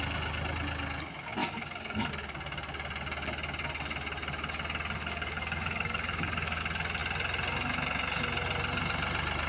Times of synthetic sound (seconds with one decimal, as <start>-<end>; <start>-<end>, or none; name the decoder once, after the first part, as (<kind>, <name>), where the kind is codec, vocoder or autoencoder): 1.4-2.1 (codec, DAC); 5.0-6.6